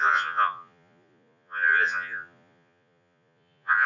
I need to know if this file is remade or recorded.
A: remade